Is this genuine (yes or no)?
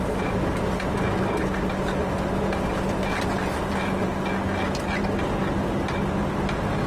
yes